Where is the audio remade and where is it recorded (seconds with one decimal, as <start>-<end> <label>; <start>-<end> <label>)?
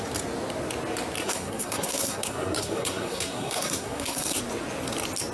0.0-1.2 recorded; 1.2-4.4 remade; 4.4-5.3 recorded